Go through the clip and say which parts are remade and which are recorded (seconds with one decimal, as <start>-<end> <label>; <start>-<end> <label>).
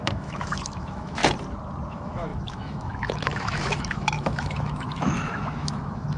0.0-1.2 remade; 1.2-1.9 recorded; 1.9-6.2 remade